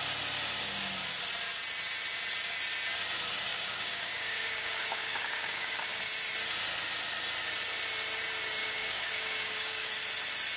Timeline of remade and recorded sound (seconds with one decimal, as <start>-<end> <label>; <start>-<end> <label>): 0.0-3.5 recorded; 3.5-6.0 remade; 6.0-8.6 recorded; 8.6-9.9 remade; 9.9-10.6 recorded